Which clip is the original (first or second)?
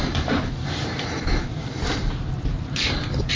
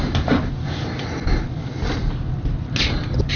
second